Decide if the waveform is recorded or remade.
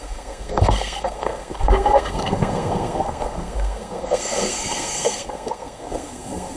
remade